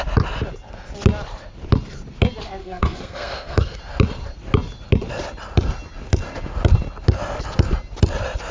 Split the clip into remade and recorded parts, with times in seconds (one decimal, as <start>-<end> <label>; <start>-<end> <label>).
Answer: 0.0-2.6 recorded; 2.6-3.8 remade; 3.8-8.5 recorded